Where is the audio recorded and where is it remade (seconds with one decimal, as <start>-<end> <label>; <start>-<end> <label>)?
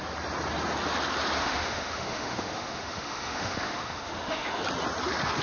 0.0-1.4 recorded; 1.4-4.6 remade; 4.6-5.4 recorded